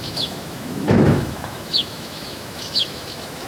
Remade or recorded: remade